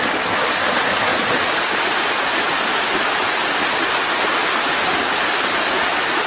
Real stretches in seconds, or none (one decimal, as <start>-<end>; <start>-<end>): 0.0-6.3

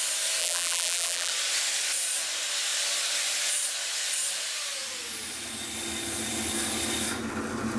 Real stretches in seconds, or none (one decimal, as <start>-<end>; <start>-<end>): 0.0-0.4; 1.3-7.8

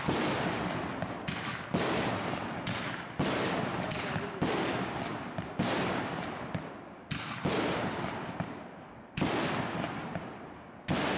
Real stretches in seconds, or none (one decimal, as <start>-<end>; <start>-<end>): 0.0-11.2